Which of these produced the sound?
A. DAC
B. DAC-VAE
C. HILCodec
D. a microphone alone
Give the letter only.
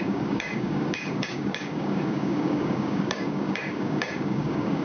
A